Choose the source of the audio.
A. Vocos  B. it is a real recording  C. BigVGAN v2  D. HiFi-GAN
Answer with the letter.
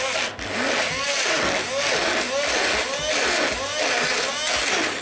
B